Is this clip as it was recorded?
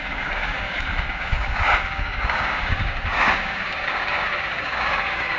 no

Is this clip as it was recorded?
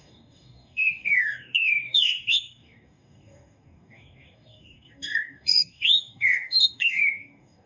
no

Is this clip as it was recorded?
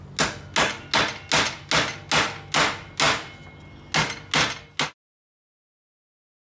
yes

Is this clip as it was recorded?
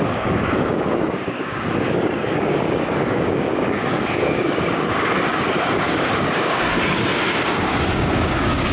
no